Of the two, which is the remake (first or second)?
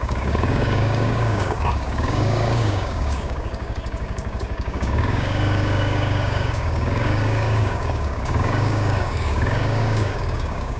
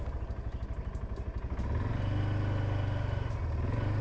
first